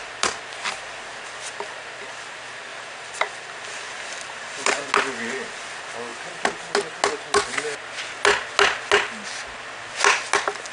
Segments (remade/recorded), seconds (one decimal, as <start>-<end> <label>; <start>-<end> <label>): 0.0-2.7 recorded; 2.7-4.9 remade; 4.9-10.7 recorded